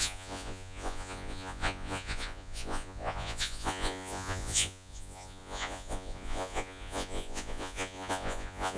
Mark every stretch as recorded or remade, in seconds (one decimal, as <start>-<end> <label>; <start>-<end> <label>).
0.0-8.8 remade